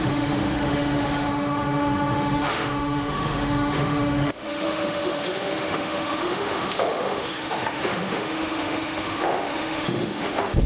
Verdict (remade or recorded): remade